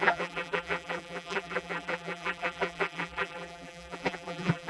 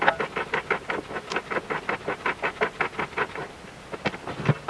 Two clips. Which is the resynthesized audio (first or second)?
first